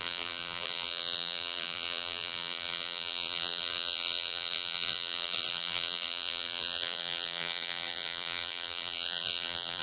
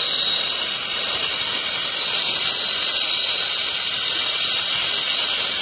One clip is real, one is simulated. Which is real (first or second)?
second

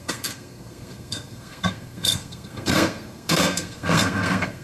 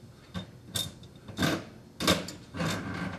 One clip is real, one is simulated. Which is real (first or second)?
second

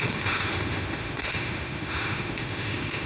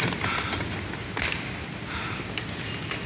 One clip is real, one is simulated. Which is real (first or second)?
second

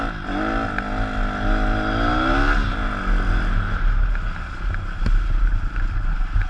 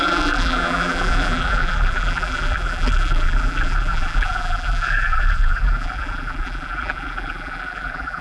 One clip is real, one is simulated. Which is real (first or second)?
first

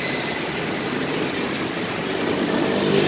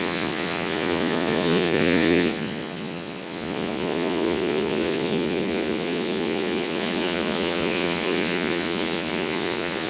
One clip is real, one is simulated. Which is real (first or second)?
first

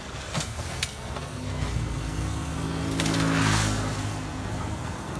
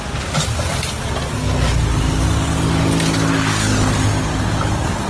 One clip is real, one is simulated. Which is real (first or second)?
second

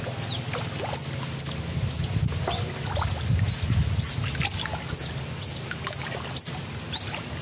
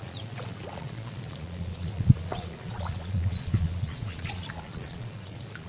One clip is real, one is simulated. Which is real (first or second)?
first